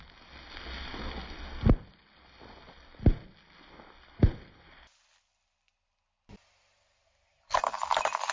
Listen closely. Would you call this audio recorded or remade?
recorded